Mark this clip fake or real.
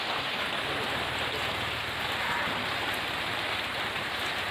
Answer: real